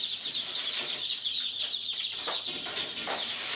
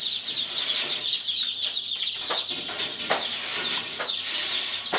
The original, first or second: second